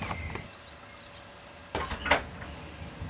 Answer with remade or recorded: recorded